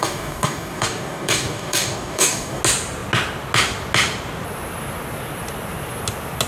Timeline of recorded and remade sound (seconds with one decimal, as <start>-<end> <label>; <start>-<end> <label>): 0.0-2.6 remade; 2.6-6.5 recorded